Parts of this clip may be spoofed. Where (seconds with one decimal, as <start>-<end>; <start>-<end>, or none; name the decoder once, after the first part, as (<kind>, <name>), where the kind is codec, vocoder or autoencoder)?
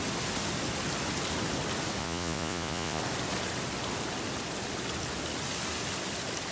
2.0-3.0 (vocoder, Vocos)